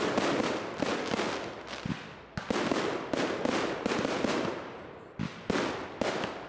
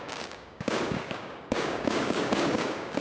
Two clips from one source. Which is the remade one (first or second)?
second